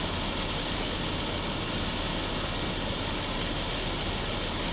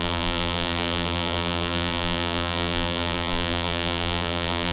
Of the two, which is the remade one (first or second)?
second